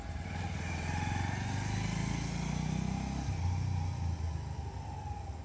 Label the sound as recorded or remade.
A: recorded